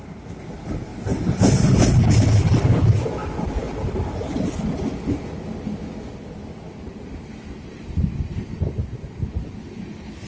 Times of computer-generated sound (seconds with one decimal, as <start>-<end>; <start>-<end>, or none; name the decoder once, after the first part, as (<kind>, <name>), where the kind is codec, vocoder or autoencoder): none